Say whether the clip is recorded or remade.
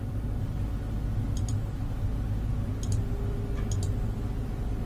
recorded